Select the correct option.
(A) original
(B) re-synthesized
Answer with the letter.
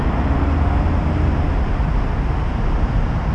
A